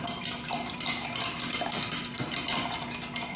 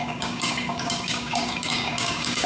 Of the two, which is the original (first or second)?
first